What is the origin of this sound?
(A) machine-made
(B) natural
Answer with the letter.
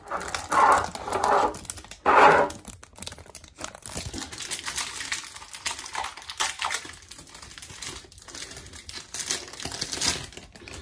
B